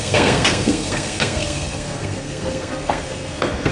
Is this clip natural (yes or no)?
no